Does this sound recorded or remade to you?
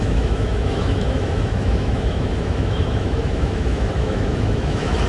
remade